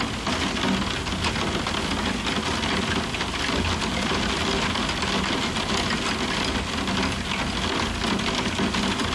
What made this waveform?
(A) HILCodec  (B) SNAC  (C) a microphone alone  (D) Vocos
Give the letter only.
C